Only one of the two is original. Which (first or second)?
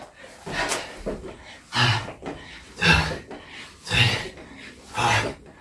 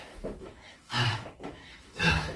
first